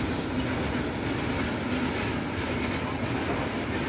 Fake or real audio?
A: real